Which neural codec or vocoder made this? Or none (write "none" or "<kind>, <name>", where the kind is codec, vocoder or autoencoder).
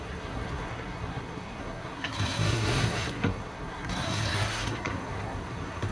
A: codec, SNAC